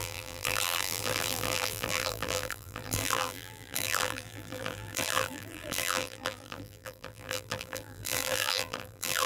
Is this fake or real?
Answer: fake